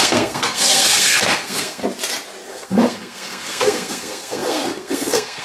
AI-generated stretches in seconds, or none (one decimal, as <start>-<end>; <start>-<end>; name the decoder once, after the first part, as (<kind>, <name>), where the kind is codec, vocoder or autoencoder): 0.0-1.8 (codec, SNAC); 2.5-5.4